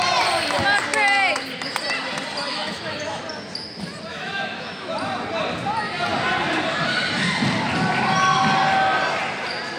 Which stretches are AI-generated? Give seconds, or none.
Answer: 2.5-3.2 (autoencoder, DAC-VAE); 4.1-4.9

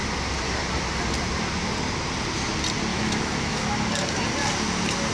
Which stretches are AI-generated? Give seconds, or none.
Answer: 2.9-3.7 (autoencoder, DAC-VAE)